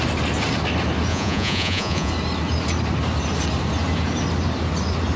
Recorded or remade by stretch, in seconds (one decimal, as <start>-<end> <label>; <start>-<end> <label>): 0.0-1.1 recorded; 1.1-2.1 remade; 2.1-5.2 recorded